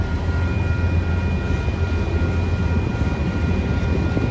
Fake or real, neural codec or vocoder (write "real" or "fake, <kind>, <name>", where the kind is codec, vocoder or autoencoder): real